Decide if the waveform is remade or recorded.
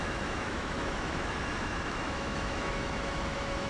remade